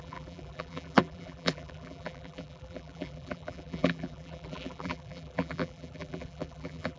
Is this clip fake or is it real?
fake